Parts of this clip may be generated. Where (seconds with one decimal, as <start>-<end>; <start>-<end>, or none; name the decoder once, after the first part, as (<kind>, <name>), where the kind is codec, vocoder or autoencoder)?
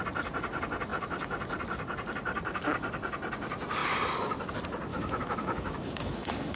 4.9-6.6 (autoencoder, DAC-VAE)